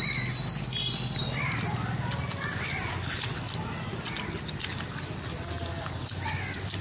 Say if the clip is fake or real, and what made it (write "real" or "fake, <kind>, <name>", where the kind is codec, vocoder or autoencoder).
real